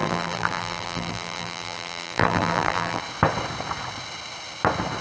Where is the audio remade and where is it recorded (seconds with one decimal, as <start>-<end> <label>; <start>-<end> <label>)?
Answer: 0.0-3.0 remade; 3.0-5.0 recorded